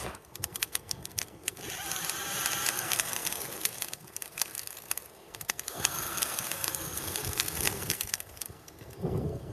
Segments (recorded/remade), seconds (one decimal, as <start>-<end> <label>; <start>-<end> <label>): 0.0-1.6 remade; 1.6-2.7 recorded; 2.7-9.5 remade